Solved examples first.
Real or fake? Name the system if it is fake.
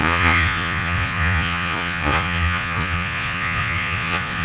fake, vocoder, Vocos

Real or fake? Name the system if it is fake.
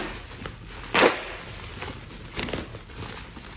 real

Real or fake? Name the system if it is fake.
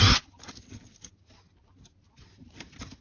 real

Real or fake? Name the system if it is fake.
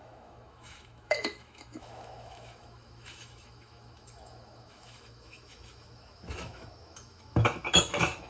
fake, autoencoder, DAC-VAE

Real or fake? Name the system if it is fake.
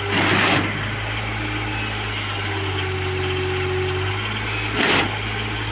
real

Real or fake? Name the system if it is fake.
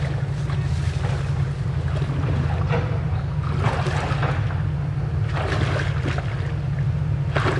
real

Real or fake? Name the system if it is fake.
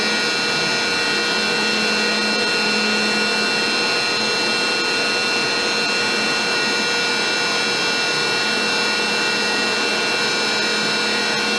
real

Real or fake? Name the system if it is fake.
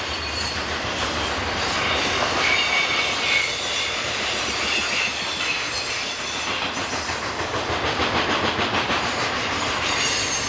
real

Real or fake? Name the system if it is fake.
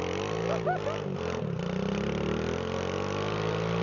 real